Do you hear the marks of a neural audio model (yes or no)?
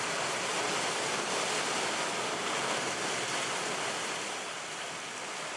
no